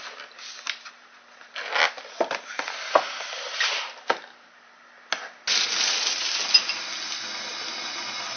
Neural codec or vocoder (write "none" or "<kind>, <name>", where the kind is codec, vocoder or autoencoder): none